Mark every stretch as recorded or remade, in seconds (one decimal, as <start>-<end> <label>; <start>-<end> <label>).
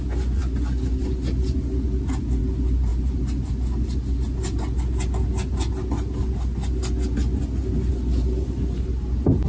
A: 0.0-9.5 recorded